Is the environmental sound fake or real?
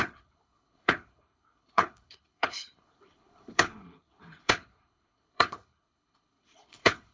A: fake